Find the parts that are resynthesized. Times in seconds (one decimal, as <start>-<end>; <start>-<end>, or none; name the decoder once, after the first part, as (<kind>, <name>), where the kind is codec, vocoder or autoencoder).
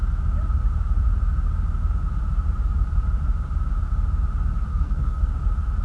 4.7-5.3 (codec, SNAC)